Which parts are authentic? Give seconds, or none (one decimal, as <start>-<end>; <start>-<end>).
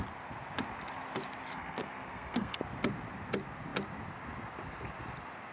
0.0-1.5; 2.6-5.5